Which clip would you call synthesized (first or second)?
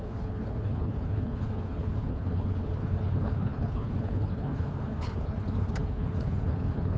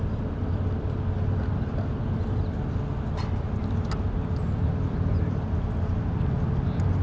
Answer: first